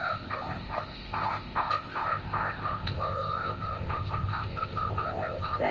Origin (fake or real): fake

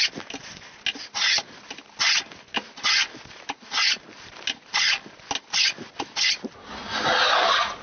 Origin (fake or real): real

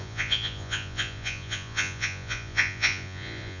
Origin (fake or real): fake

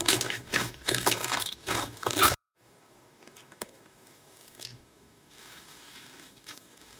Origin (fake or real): fake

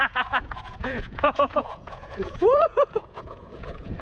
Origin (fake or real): fake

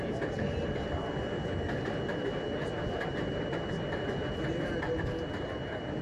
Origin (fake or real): real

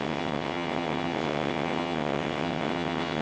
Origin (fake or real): fake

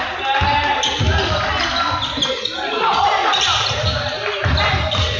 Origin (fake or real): real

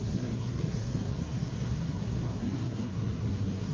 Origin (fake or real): fake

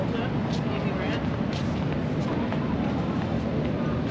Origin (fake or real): real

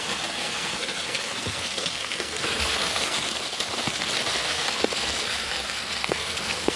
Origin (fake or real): fake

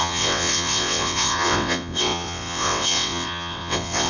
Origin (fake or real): fake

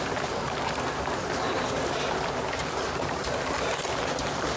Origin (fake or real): real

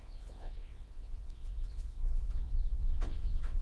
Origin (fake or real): fake